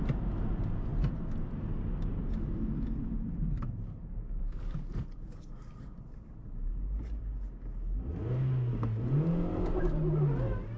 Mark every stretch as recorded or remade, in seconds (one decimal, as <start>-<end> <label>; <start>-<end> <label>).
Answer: 0.0-0.9 recorded; 0.9-2.1 remade; 2.1-4.0 recorded; 4.0-5.7 remade; 5.7-10.8 recorded